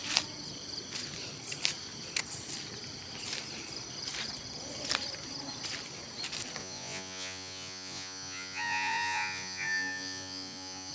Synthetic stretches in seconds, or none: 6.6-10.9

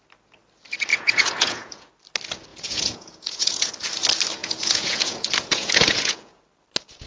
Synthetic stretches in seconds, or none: 0.9-1.9; 2.5-3.7; 4.4-6.4

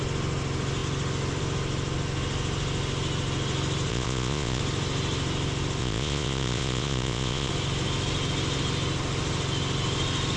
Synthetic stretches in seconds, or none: 3.9-4.6; 5.8-7.5

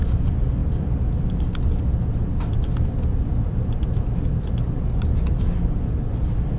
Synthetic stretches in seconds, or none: none

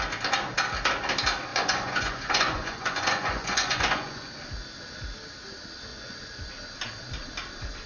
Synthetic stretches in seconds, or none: 1.5-4.3; 5.9-6.5

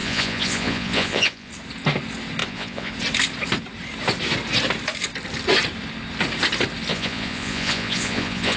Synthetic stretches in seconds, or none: 0.0-1.5; 2.4-2.9; 6.9-8.6

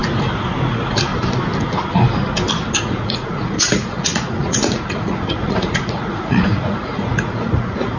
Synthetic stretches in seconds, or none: 0.7-1.1; 2.8-8.0